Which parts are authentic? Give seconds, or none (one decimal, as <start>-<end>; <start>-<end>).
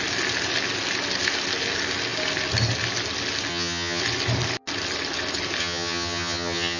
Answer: 0.0-3.5; 4.0-5.6